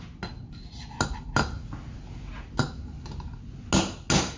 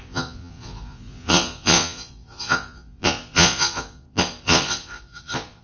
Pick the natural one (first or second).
first